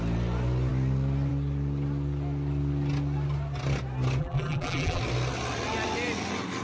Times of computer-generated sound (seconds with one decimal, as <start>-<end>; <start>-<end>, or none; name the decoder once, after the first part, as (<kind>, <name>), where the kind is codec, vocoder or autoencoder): 4.2-5.0 (vocoder, BigVGAN v2)